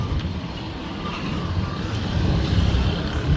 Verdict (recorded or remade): recorded